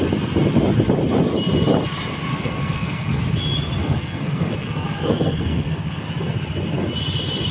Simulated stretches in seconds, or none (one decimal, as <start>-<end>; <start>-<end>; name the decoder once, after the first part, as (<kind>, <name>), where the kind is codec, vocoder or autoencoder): 2.3-3.2 (codec, SNAC); 3.8-6.1